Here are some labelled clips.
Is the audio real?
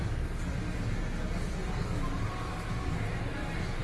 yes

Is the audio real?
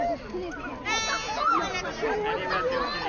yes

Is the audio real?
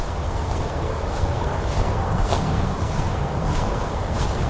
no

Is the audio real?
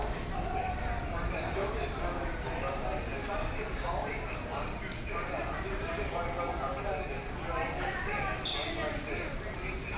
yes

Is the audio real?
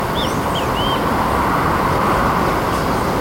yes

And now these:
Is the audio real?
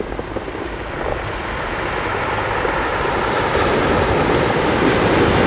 yes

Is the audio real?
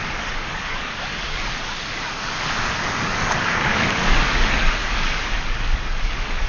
no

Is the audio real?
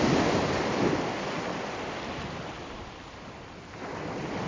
yes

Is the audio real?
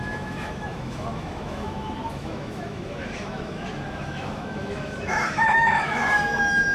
no